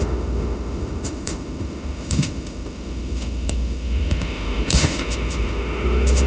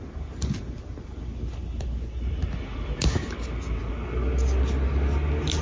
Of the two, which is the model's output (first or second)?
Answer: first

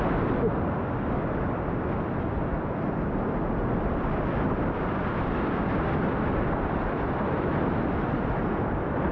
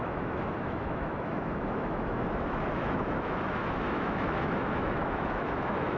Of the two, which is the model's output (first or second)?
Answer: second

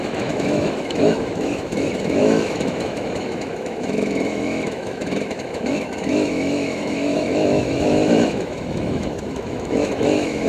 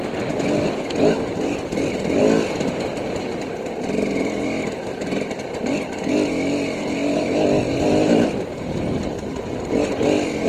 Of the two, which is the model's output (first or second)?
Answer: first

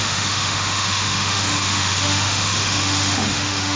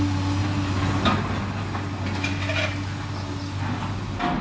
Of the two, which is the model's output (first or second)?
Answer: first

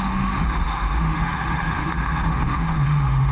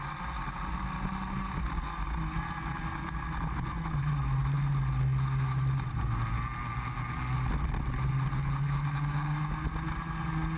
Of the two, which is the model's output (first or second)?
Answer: first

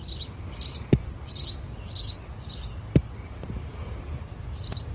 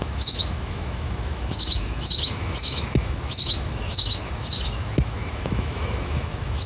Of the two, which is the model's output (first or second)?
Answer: second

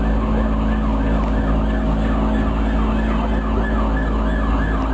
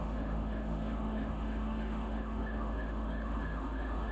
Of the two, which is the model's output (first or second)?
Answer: second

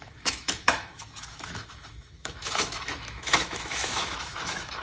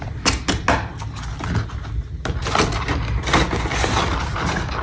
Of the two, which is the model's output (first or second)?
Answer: first